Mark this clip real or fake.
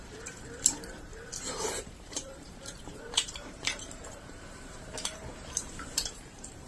fake